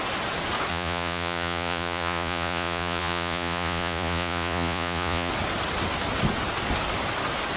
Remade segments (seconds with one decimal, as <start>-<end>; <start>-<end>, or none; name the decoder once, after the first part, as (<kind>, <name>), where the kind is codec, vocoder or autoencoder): 0.7-5.3 (vocoder, Vocos)